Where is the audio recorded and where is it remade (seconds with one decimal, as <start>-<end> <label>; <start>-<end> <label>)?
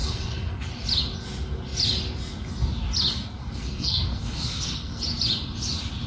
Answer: 0.0-0.7 remade; 0.7-3.4 recorded; 3.4-5.0 remade; 5.0-6.1 recorded